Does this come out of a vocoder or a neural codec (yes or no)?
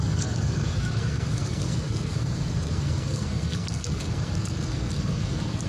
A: yes